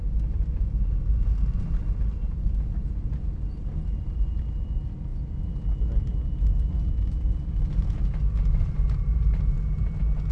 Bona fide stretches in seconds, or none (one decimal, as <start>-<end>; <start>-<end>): 0.0-10.3